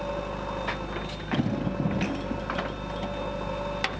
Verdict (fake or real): real